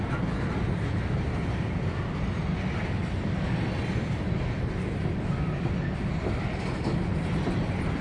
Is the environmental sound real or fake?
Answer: real